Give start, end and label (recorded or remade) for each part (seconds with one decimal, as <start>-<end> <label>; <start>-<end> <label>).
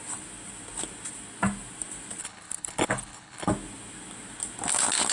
0.0-2.2 recorded; 2.2-3.5 remade; 3.5-5.1 recorded